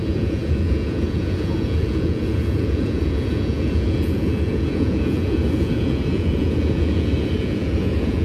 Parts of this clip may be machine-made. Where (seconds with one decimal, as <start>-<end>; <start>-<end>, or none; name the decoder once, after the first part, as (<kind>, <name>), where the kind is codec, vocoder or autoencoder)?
0.0-8.2 (vocoder, Vocos)